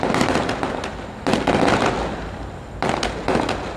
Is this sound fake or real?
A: fake